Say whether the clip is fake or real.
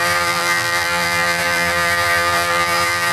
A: fake